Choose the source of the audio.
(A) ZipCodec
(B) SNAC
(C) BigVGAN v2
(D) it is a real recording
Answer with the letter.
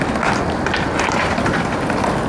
D